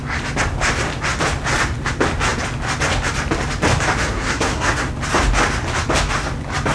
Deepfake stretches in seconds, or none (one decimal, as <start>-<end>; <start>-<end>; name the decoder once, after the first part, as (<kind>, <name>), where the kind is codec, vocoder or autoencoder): 4.0-4.9 (codec, SNAC)

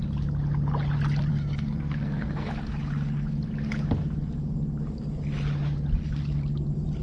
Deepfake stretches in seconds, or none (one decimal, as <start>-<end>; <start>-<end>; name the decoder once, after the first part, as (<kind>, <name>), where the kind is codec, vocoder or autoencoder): 1.3-2.5 (codec, SNAC)